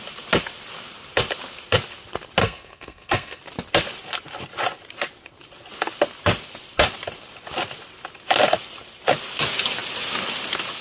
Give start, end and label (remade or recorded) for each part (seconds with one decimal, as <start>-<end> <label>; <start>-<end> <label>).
0.0-2.4 recorded; 2.4-3.4 remade; 3.4-10.8 recorded